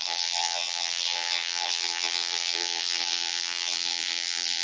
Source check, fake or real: fake